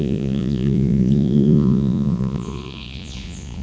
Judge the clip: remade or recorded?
remade